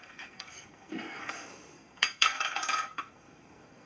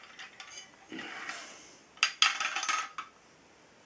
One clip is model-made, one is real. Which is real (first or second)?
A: second